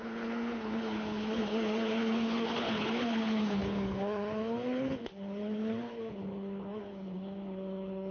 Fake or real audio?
fake